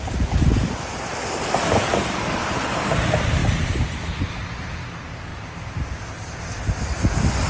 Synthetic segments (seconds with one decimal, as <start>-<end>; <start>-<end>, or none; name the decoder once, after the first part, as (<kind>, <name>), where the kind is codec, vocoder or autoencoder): 5.3-6.5 (vocoder, BigVGAN v2)